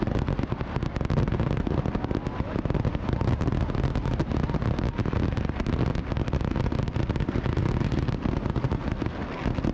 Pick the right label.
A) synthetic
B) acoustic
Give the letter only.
B